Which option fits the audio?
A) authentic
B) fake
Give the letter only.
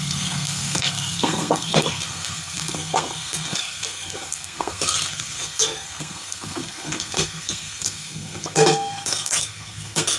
B